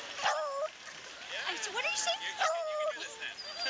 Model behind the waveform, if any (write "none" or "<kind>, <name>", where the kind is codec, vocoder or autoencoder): vocoder, BigVGAN v2